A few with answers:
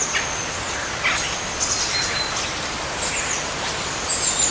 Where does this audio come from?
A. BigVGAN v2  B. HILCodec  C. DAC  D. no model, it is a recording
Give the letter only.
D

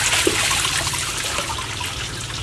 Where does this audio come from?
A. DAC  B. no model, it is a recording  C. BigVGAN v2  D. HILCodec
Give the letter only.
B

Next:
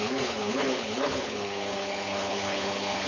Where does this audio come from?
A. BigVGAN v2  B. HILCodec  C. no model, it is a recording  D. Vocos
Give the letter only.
B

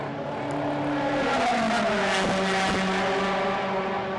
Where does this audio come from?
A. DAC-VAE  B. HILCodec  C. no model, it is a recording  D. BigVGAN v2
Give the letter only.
C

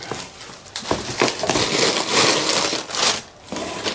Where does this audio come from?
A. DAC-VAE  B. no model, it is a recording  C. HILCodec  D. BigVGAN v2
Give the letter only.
B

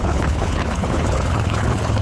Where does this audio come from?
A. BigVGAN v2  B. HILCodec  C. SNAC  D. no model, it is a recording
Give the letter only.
B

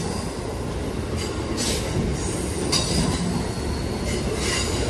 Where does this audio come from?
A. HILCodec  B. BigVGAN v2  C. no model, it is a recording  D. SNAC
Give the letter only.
C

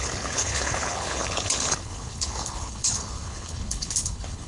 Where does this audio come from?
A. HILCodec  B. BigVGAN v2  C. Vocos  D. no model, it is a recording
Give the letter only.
A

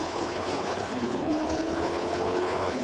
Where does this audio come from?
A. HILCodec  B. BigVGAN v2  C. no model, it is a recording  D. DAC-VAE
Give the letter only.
A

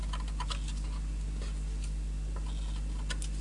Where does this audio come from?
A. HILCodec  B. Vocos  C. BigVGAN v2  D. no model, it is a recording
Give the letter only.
D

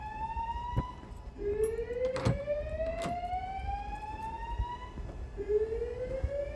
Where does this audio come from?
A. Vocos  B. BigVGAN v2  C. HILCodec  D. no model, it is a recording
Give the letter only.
D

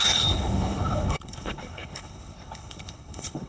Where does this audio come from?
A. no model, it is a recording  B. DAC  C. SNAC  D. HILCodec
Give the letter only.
D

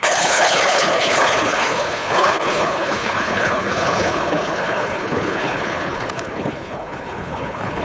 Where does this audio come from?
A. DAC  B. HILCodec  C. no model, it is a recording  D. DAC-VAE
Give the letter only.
B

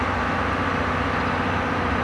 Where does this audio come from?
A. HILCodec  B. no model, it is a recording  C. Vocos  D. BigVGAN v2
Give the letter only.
B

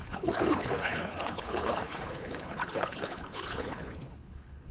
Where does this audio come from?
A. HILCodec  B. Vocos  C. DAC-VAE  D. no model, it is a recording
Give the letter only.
A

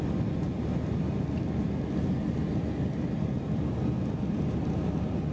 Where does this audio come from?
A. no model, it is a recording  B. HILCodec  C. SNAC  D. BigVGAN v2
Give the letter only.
A